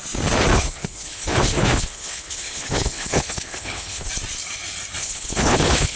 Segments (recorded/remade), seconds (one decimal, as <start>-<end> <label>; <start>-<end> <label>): 0.0-0.5 recorded; 0.5-4.1 remade; 4.1-5.0 recorded; 5.0-6.0 remade